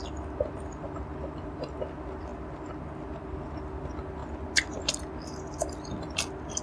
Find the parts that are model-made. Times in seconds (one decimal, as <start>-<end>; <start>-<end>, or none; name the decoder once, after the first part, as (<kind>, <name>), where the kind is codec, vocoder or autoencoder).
none

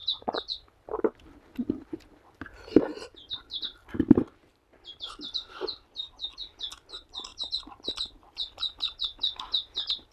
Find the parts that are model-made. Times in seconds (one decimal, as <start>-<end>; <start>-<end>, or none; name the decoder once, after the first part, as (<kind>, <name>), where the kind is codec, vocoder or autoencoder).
0.0-5.1 (vocoder, BigVGAN v2); 7.3-8.6

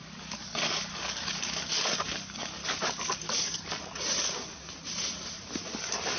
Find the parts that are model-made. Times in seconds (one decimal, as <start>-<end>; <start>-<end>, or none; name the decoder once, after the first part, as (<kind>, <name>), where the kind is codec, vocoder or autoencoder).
0.0-2.6 (codec, DAC); 3.2-3.8

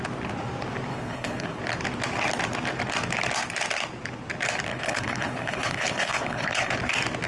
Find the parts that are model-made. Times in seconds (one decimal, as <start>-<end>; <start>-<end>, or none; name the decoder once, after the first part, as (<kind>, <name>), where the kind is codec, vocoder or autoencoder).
0.9-1.6 (codec, HILCodec); 4.7-6.7

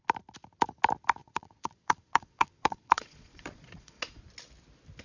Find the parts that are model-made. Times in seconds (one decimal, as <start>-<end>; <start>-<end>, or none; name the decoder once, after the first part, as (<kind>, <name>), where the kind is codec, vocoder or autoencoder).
1.2-4.2 (vocoder, Vocos)

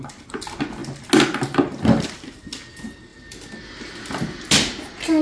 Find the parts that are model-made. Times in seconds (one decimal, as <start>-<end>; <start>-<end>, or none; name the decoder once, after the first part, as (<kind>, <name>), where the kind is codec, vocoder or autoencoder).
none

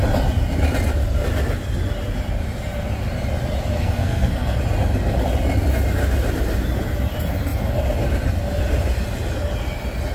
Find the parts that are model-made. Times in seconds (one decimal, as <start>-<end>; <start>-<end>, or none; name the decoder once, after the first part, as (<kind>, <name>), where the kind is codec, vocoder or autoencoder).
3.7-4.6 (codec, SNAC)